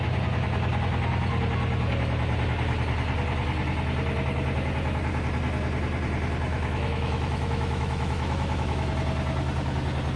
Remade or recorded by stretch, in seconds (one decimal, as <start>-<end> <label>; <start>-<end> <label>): 0.0-6.5 recorded; 6.5-8.9 remade; 8.9-10.2 recorded